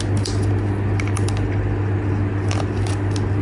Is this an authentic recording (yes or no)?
yes